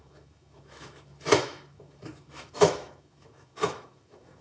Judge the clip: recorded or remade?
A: remade